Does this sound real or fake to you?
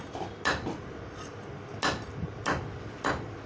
real